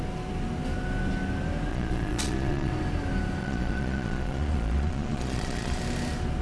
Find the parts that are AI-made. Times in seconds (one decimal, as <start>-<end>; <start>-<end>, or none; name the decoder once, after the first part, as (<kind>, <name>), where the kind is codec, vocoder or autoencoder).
1.7-2.7 (vocoder, Vocos); 3.4-5.8